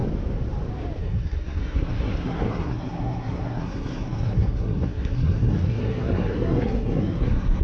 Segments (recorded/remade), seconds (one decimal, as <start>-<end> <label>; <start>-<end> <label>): 0.0-1.0 recorded; 1.0-7.6 remade